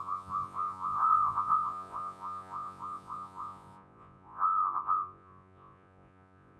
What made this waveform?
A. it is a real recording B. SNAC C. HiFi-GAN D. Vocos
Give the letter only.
D